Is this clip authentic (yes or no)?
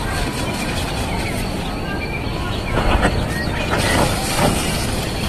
yes